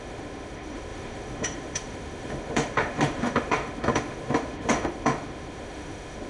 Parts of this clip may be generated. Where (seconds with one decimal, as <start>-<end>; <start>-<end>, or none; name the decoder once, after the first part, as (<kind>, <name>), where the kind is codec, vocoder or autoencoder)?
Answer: 0.0-6.3 (autoencoder, DAC-VAE)